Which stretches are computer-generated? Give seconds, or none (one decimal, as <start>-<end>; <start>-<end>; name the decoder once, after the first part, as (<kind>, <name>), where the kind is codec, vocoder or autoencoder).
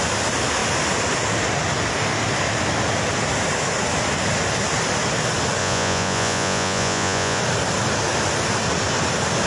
5.6-7.4 (vocoder, Vocos)